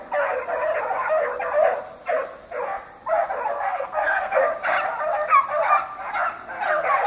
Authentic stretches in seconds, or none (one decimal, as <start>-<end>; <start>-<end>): 0.0-3.5; 4.4-7.1